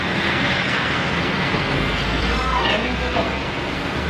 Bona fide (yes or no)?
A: no